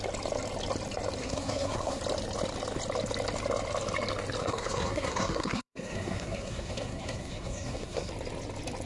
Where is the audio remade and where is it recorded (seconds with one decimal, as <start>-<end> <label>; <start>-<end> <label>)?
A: 0.0-1.2 recorded; 1.2-2.0 remade; 2.0-4.4 recorded; 4.4-8.1 remade; 8.1-8.9 recorded